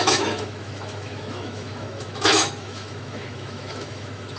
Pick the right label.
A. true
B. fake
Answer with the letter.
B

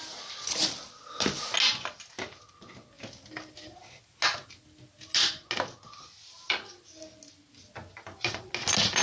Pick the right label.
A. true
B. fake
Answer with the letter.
A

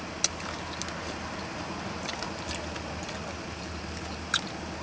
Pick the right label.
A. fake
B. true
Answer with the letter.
B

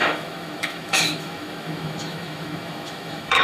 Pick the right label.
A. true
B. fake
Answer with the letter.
B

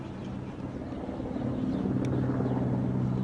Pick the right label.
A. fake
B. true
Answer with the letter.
B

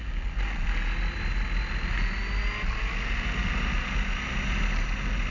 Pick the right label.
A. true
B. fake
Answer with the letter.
A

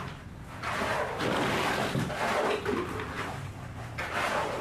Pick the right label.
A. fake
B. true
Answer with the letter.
B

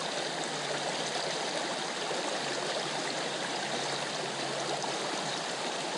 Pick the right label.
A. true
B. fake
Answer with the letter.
A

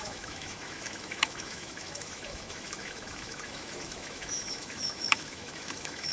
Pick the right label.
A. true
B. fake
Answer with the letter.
B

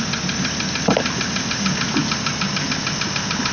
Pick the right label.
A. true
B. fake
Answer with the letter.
A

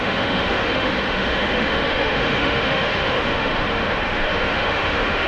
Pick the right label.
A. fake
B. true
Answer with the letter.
A